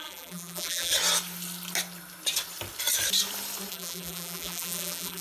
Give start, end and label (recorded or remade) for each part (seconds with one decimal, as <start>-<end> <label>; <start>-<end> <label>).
0.0-0.9 remade; 0.9-3.7 recorded; 3.7-5.2 remade